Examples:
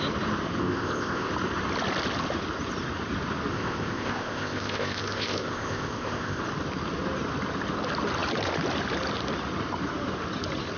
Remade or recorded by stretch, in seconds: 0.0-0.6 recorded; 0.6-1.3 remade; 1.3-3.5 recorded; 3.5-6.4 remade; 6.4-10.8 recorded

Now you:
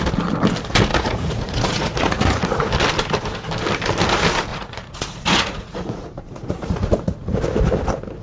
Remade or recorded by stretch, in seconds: 0.0-0.9 recorded; 0.9-2.7 remade; 2.7-4.5 recorded; 4.5-7.4 remade; 7.4-8.2 recorded

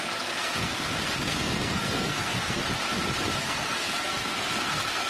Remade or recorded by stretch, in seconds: 0.0-2.6 remade; 2.6-3.4 recorded; 3.4-5.1 remade

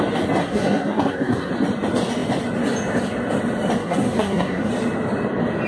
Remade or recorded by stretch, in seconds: 0.0-0.4 recorded; 0.4-1.5 remade; 1.5-3.8 recorded; 3.8-4.7 remade; 4.7-5.7 recorded

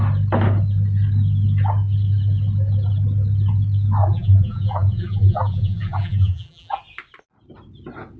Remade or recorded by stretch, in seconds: 0.0-4.0 recorded; 4.0-6.8 remade; 6.8-8.2 recorded

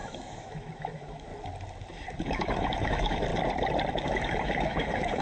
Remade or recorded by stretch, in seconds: 0.0-1.3 remade; 1.3-2.2 recorded; 2.2-3.3 remade; 3.3-3.9 recorded; 3.9-5.2 remade

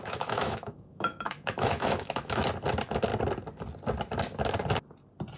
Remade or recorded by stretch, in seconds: 0.0-2.4 remade; 2.4-5.4 recorded